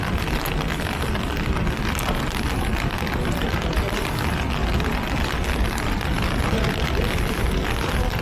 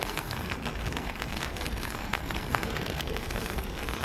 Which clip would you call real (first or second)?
first